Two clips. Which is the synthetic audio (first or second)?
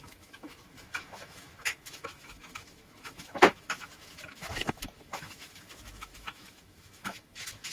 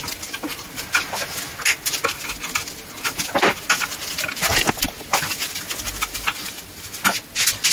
first